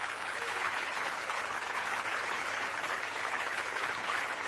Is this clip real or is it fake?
fake